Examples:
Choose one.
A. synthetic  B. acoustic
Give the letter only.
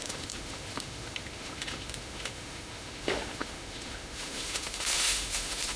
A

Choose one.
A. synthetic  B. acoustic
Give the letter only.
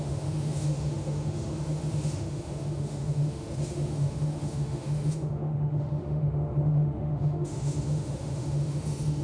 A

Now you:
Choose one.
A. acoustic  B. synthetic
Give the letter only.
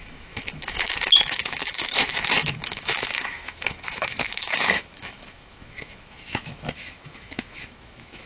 B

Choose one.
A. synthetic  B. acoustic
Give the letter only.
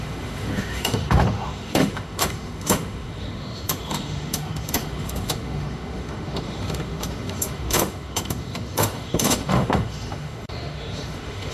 A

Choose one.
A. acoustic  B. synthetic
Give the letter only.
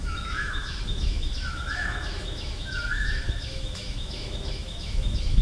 B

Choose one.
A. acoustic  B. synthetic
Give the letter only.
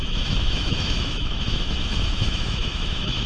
B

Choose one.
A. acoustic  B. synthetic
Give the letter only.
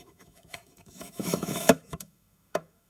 B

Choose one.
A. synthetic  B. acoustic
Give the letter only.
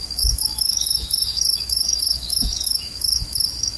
A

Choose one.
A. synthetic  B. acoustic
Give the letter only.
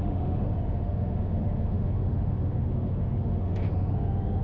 A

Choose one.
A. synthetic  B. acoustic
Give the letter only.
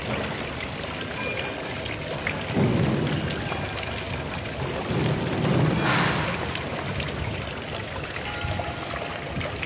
B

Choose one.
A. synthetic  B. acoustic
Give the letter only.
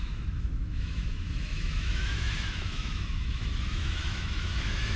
A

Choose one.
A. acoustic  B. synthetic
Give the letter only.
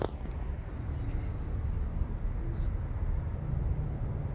A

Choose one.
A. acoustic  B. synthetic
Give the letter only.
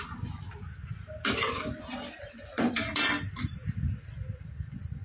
A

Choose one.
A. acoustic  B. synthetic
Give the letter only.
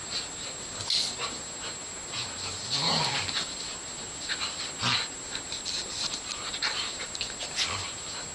A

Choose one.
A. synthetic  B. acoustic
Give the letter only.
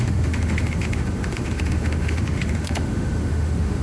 A